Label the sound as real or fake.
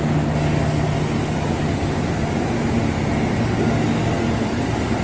real